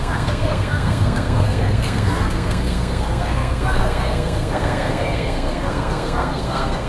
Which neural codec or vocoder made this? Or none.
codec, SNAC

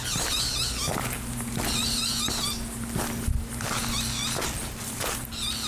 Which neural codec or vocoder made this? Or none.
none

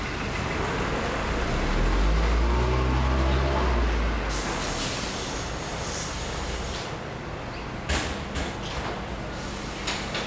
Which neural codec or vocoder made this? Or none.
none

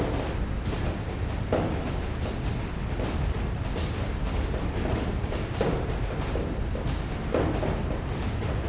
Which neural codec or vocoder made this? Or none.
none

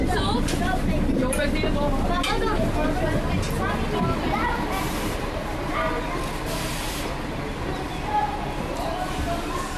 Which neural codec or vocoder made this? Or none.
none